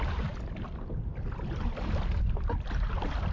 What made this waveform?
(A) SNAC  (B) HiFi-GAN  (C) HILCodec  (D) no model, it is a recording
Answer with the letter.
D